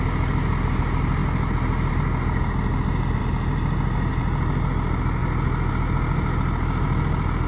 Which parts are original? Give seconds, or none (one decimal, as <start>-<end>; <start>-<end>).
0.0-7.5